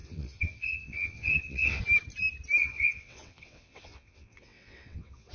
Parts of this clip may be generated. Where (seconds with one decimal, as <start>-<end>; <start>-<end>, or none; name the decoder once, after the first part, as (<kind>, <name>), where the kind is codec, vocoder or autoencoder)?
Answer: 0.0-1.8 (vocoder, WaveNeXt); 2.6-5.3